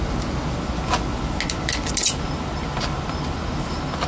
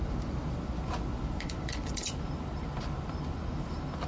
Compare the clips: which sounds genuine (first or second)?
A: first